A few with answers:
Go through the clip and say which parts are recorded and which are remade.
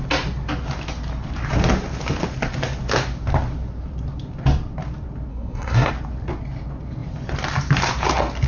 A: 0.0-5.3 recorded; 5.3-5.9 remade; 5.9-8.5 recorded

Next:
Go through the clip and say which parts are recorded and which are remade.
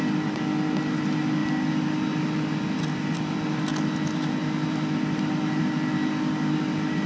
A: 0.0-7.1 recorded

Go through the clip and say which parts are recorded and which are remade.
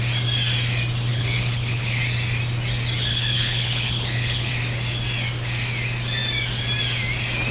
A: 0.0-1.1 recorded; 1.1-2.0 remade; 2.0-3.1 recorded; 3.1-4.5 remade; 4.5-7.5 recorded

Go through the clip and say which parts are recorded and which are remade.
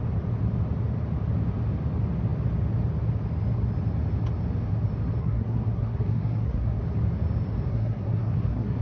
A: 0.0-5.2 recorded; 5.2-6.8 remade; 6.8-7.7 recorded; 7.7-8.8 remade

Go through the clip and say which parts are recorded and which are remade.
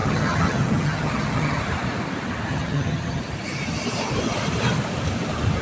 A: 0.0-1.6 remade; 1.6-2.5 recorded; 2.5-3.2 remade; 3.2-5.6 recorded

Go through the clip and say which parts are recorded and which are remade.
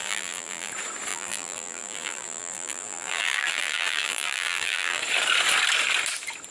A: 0.0-0.7 remade; 0.7-1.1 recorded; 1.1-5.0 remade; 5.0-6.5 recorded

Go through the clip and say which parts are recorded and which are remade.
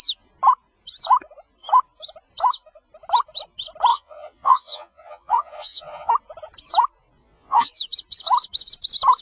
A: 0.0-3.9 recorded; 3.9-6.1 remade; 6.1-7.2 recorded; 7.2-7.7 remade; 7.7-9.2 recorded